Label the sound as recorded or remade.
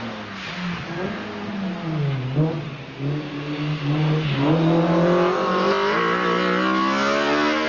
recorded